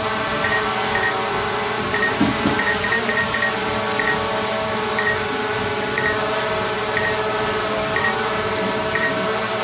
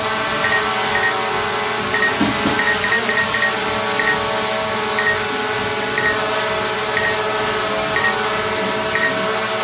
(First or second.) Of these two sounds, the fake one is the first